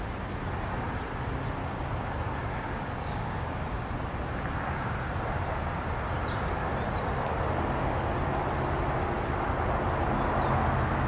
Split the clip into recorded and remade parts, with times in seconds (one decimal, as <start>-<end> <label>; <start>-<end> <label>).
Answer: 0.0-2.5 recorded; 2.5-3.6 remade; 3.6-11.1 recorded

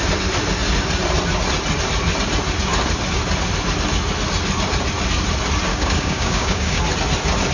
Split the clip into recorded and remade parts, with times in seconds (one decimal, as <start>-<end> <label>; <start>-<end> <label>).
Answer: 0.0-5.7 recorded; 5.7-6.8 remade; 6.8-7.5 recorded

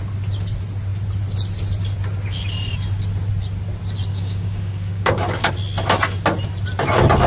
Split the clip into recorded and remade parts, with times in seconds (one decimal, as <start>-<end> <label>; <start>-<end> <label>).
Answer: 0.0-4.1 recorded; 4.1-5.5 remade; 5.5-7.3 recorded

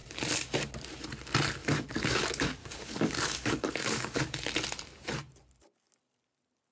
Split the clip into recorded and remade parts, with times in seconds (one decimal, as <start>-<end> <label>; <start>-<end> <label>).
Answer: 0.0-1.6 recorded; 1.6-4.3 remade; 4.3-6.7 recorded